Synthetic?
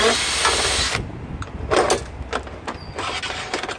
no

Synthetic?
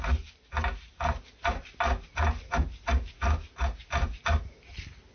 no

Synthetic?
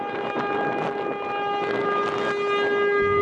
no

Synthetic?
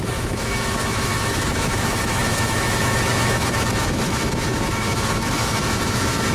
yes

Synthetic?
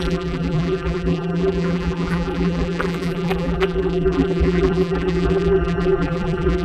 yes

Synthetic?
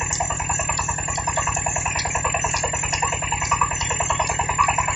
no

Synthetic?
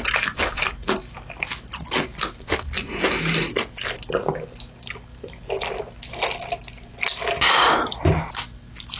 no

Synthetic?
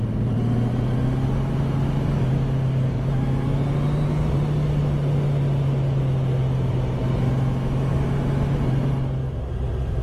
no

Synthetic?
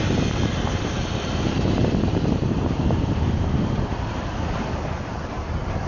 yes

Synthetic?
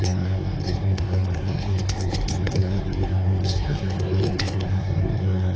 yes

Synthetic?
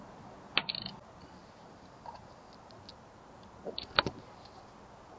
no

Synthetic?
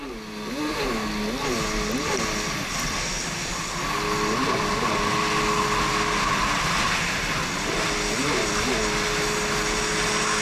no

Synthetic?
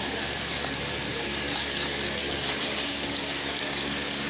yes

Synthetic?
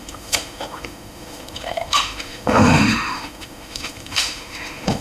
yes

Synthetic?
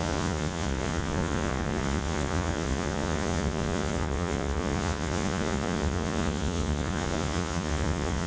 yes